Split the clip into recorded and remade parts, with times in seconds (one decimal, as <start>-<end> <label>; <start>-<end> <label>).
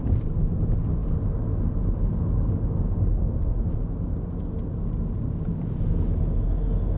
0.0-7.0 recorded